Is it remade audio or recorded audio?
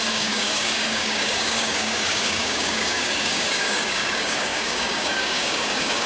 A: remade